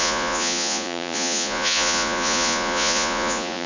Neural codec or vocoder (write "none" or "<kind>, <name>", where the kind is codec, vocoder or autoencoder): vocoder, Vocos